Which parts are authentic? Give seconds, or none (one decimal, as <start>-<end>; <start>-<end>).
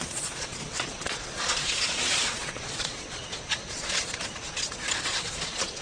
none